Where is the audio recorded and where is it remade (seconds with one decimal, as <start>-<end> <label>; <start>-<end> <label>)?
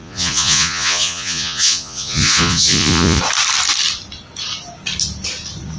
0.0-3.2 remade; 3.2-5.8 recorded